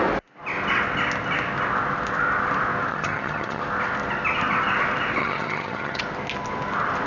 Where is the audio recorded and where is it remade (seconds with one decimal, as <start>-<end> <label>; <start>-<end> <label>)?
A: 0.0-2.9 recorded; 2.9-3.6 remade; 3.6-5.2 recorded; 5.2-6.0 remade; 6.0-7.1 recorded